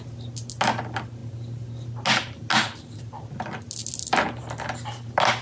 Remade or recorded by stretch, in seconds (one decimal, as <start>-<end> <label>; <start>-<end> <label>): 0.0-5.4 recorded